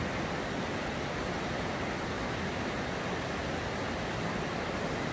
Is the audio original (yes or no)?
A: yes